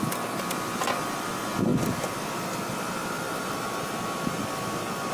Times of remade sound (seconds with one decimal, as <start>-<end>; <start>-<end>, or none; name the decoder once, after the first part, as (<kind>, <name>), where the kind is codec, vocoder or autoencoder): none